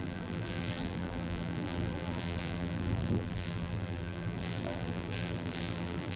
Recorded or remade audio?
remade